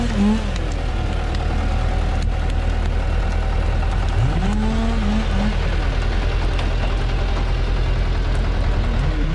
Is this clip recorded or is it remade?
recorded